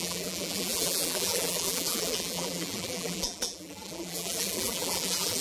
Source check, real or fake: fake